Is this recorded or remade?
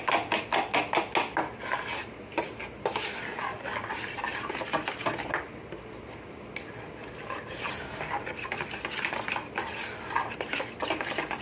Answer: recorded